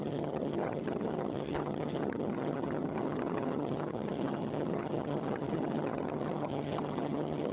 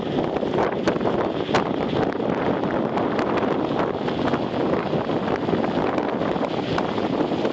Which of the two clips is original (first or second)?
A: second